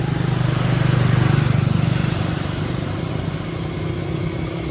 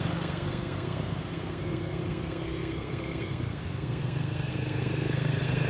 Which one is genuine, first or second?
first